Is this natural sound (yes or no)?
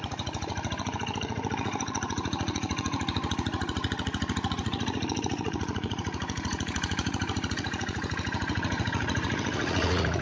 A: no